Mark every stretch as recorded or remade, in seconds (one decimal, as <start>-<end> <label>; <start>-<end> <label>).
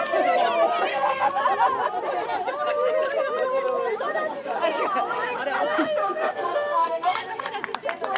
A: 0.0-0.9 recorded; 0.9-1.4 remade; 1.4-6.0 recorded; 6.0-7.5 remade; 7.5-8.2 recorded